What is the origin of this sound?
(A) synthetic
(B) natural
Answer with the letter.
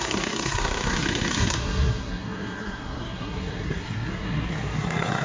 A